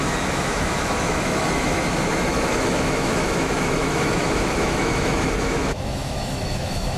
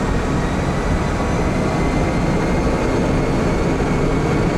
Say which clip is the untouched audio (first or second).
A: second